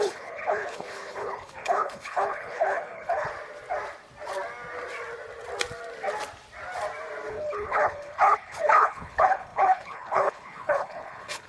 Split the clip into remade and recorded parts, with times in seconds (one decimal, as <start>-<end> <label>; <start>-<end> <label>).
0.0-3.3 remade; 3.3-7.3 recorded; 7.3-11.5 remade